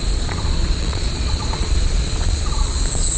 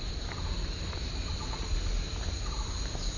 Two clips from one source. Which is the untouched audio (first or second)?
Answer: second